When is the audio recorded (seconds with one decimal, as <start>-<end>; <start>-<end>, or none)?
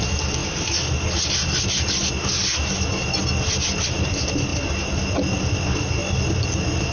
0.0-6.9